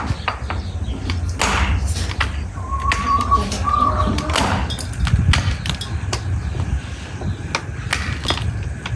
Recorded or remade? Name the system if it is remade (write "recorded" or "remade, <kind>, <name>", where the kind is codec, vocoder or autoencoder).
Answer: recorded